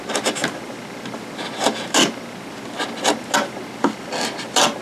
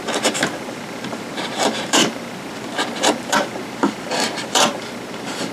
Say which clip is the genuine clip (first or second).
first